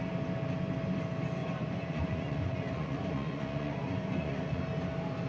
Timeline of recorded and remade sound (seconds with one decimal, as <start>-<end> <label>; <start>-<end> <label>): 0.0-1.4 recorded; 1.4-4.6 remade; 4.6-5.3 recorded